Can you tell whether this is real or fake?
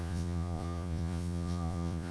fake